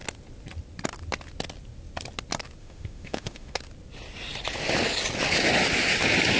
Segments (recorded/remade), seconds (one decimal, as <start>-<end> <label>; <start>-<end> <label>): 0.0-2.6 recorded; 2.6-3.6 remade; 3.6-6.4 recorded